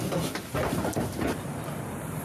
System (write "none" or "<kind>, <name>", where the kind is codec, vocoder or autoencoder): vocoder, BigVGAN v2